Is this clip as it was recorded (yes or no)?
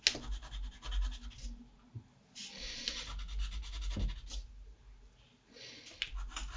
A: yes